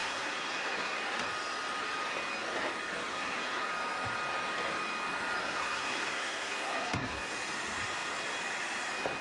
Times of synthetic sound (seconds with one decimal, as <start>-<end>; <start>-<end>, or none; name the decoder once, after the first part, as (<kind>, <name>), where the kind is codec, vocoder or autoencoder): 0.0-1.0 (codec, SNAC); 3.1-3.7; 5.4-7.3